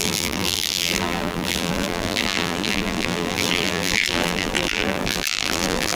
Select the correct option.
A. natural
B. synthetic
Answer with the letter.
B